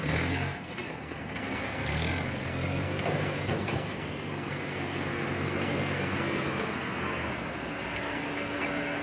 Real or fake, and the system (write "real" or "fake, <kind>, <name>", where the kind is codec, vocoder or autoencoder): fake, codec, SNAC